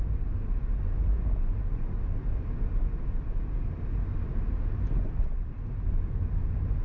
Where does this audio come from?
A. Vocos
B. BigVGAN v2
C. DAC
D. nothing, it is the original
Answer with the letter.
D